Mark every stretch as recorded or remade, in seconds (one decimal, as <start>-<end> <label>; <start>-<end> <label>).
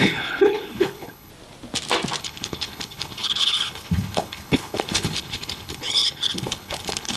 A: 0.0-1.3 remade; 1.3-2.2 recorded; 2.2-7.2 remade